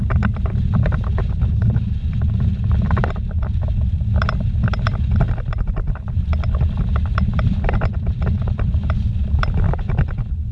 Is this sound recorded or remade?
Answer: recorded